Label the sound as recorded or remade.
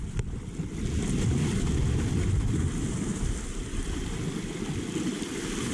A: recorded